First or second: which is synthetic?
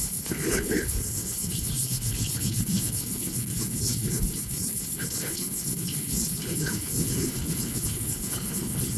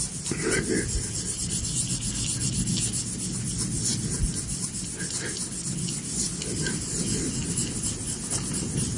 first